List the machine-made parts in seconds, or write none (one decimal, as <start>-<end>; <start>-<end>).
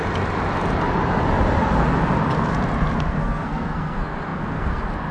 3.1-5.1